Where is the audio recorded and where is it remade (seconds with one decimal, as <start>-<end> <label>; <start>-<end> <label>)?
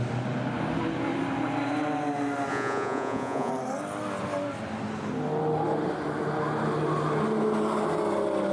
0.0-2.5 recorded; 2.5-3.5 remade; 3.5-8.5 recorded